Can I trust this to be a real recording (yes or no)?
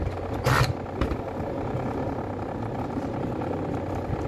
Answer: yes